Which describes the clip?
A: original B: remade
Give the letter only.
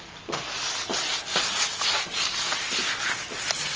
A